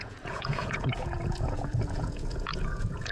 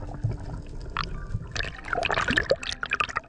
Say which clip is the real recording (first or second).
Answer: second